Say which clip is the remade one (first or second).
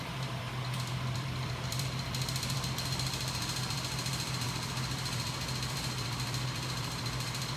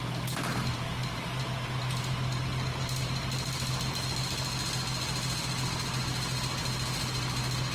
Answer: first